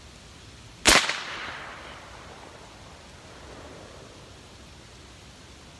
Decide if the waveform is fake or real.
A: real